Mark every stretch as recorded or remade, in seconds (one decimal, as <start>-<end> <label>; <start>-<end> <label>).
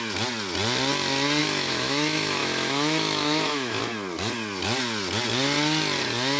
0.0-1.4 recorded; 1.4-3.8 remade; 3.8-6.4 recorded